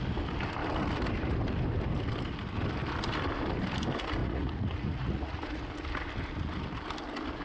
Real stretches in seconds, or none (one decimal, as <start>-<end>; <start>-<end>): 0.0-4.2; 5.6-7.4

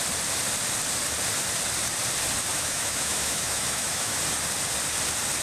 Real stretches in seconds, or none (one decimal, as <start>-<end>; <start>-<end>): 0.0-2.5; 4.2-5.4

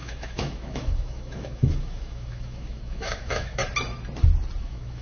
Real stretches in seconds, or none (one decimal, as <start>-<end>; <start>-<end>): 3.6-4.6

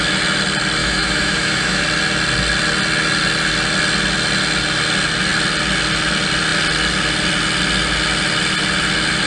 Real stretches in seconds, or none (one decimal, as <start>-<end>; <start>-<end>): 0.0-0.8; 1.8-9.3

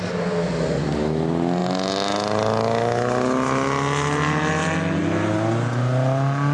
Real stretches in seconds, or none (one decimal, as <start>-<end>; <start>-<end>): 0.0-6.5